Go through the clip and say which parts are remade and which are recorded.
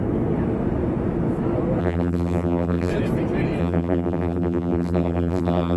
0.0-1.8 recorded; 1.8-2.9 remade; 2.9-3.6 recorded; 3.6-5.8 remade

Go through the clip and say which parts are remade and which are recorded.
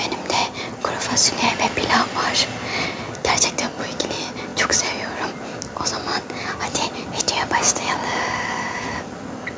0.0-9.6 recorded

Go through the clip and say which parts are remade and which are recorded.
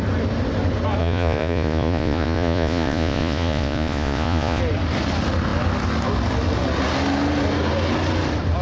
0.0-1.0 recorded; 1.0-4.6 remade; 4.6-8.6 recorded